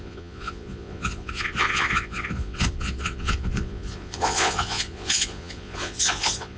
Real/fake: fake